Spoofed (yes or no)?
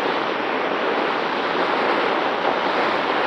no